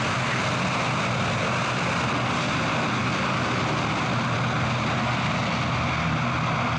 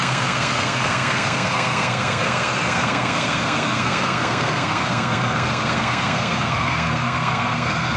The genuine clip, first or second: first